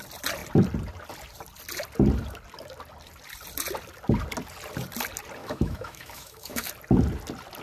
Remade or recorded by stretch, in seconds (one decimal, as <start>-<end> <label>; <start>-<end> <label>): 0.0-5.4 recorded; 5.4-6.7 remade; 6.7-7.6 recorded